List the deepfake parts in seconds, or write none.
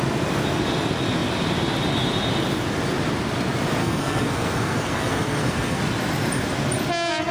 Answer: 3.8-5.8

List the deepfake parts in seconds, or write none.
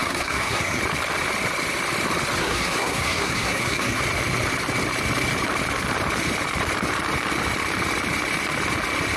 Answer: 0.0-0.8; 2.4-4.0